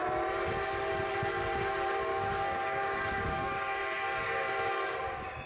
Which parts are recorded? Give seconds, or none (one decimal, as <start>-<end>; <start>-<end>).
0.0-2.1